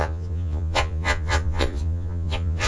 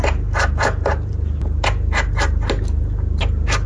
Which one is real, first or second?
second